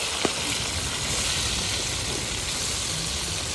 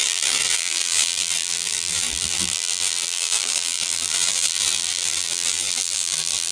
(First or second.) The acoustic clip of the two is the first